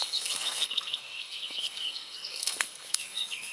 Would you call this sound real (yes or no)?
no